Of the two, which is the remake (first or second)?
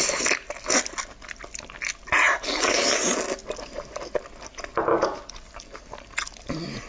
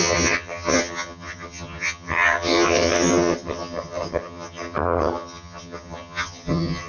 second